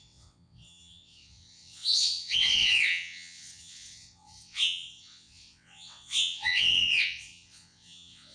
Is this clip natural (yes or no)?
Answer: no